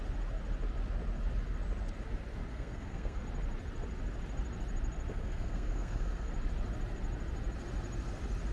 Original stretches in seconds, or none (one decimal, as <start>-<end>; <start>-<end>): 0.0-2.5; 3.2-5.1; 6.3-8.5